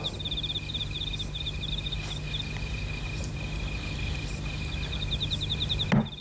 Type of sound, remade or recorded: recorded